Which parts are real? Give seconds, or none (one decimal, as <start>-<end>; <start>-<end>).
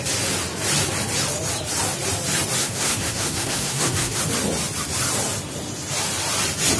0.0-2.6; 4.2-6.8